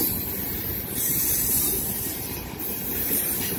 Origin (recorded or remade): remade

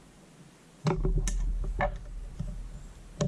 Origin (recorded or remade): recorded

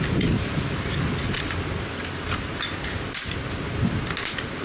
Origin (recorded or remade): recorded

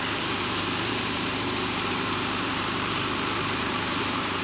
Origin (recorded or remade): remade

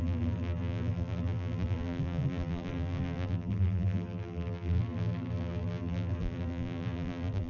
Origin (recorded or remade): remade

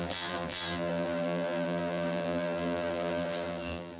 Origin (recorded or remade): remade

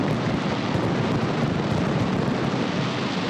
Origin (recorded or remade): remade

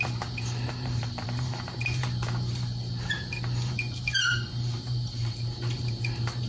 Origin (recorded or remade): remade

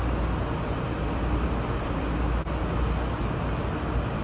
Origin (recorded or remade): recorded